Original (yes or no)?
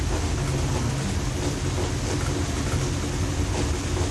yes